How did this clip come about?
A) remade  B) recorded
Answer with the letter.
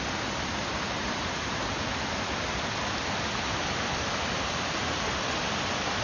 A